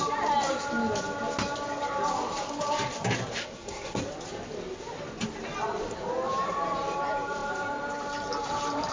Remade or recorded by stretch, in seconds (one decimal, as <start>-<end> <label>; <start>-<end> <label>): 0.0-3.4 recorded; 3.4-4.0 remade; 4.0-8.9 recorded